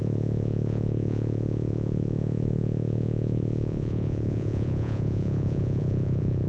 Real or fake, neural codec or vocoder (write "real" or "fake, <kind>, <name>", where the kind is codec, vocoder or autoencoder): fake, vocoder, Vocos